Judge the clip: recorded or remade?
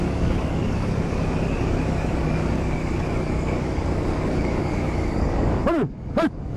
remade